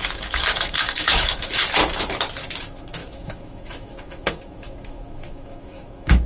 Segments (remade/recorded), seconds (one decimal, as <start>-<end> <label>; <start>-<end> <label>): 0.0-1.6 remade; 1.6-2.6 recorded; 2.6-6.3 remade